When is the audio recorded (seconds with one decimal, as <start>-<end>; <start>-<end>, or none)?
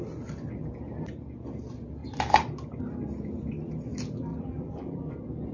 0.0-4.3; 5.1-5.5